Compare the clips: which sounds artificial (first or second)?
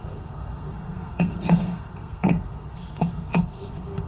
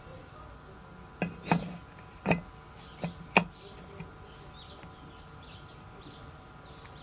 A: first